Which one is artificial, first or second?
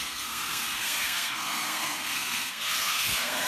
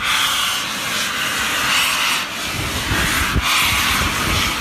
first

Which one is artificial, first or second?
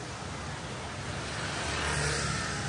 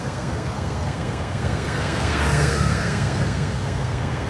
second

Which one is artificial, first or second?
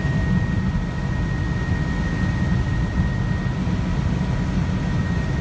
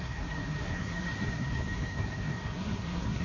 second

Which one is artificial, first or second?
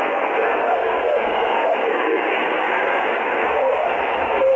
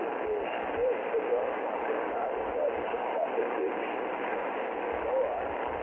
first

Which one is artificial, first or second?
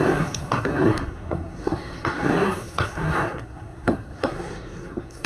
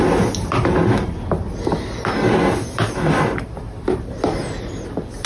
first